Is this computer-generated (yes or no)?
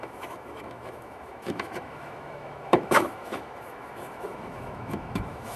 yes